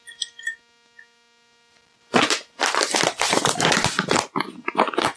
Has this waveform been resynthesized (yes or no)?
no